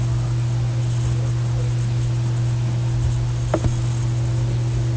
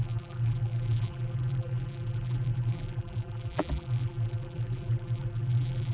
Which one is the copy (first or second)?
second